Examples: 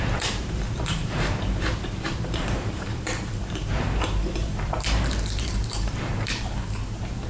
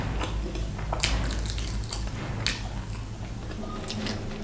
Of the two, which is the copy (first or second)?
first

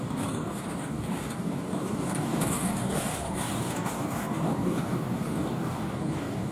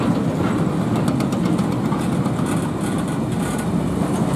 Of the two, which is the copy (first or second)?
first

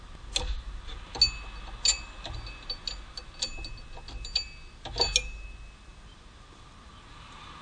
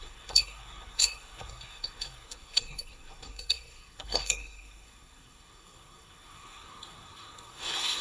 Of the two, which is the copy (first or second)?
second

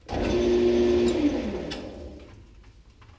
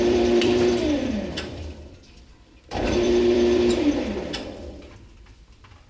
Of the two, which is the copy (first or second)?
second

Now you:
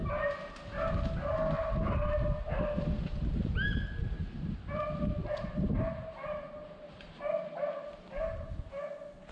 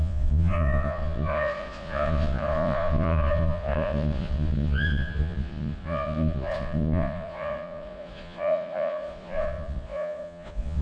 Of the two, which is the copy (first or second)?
second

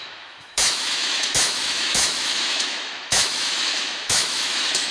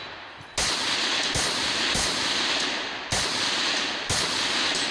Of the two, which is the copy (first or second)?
first